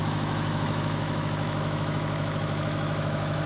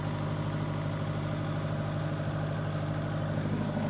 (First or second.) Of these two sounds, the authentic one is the second